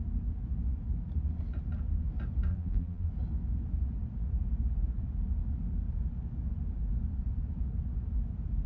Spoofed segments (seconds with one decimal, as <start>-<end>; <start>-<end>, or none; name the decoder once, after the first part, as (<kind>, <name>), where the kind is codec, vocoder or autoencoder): 2.5-3.1 (vocoder, BigVGAN v2)